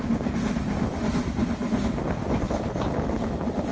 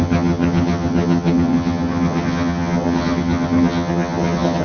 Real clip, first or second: first